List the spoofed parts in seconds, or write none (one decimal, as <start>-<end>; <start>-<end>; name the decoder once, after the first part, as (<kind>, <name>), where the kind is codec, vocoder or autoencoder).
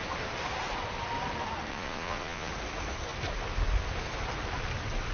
1.7-2.5 (vocoder, Vocos)